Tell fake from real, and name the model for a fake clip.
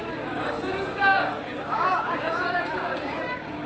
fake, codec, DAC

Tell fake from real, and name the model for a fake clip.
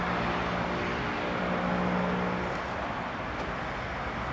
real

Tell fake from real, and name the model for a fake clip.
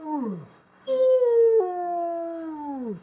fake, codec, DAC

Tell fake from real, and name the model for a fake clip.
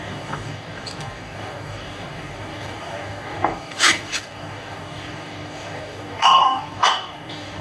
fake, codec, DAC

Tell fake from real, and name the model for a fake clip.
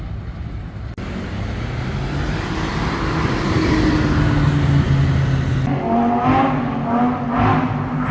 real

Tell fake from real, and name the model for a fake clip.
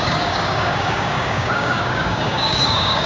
fake, codec, DAC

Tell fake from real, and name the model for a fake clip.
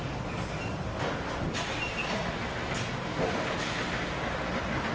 real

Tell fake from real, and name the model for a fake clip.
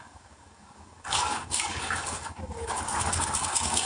fake, codec, DAC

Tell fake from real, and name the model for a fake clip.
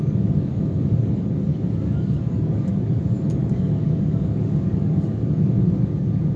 fake, codec, DAC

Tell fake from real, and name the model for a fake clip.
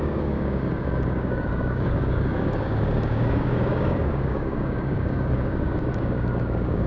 fake, codec, DAC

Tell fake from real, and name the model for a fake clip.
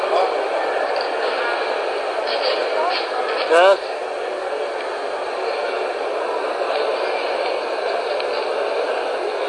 real